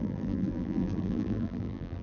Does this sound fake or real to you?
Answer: fake